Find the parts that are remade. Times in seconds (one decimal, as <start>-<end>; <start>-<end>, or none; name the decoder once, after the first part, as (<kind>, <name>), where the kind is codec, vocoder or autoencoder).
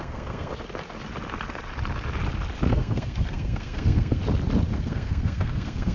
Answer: 0.0-0.5 (codec, SNAC); 2.7-4.2; 4.7-5.9